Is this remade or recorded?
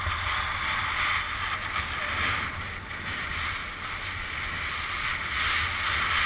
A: recorded